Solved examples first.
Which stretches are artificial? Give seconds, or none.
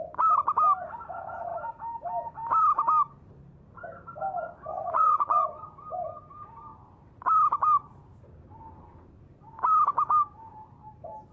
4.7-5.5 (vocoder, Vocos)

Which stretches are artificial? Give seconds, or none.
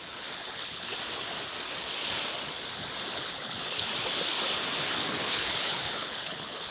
0.0-0.9 (codec, HILCodec); 3.2-3.9; 4.6-6.7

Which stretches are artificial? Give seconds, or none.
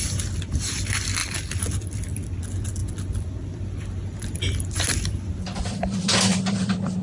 1.2-2.4 (vocoder, BigVGAN v2); 2.8-7.0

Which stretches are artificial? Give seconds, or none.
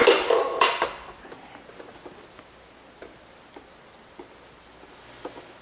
none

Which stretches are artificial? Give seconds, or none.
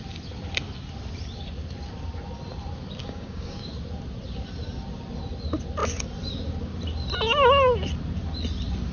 3.0-3.7 (codec, DAC)